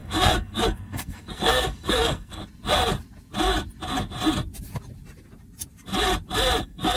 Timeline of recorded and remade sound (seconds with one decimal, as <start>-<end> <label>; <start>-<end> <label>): 0.0-2.4 remade; 2.4-6.6 recorded; 6.6-7.0 remade